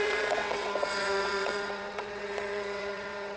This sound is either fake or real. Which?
fake